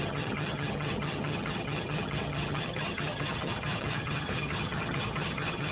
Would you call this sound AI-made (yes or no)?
yes